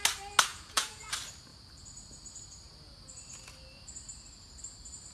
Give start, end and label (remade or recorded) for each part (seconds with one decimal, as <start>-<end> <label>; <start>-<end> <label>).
0.0-0.5 recorded; 0.5-1.1 remade; 1.1-5.1 recorded